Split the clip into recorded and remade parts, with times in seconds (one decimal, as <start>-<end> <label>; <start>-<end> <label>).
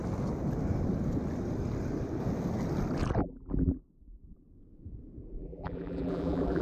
0.0-3.2 recorded; 3.2-3.8 remade; 3.8-5.4 recorded; 5.4-6.6 remade